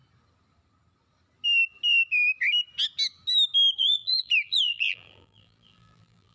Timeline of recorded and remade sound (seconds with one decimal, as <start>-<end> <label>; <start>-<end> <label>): 0.0-3.8 recorded; 3.8-6.3 remade